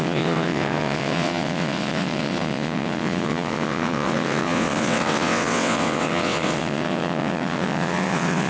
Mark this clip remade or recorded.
remade